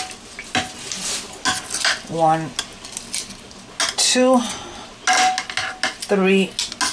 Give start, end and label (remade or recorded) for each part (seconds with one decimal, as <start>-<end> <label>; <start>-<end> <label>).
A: 0.0-6.9 recorded